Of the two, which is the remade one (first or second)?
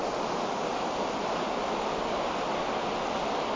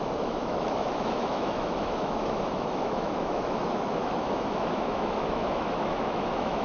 second